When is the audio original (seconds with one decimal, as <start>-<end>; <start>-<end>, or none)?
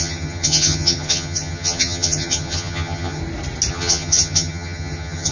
3.2-3.7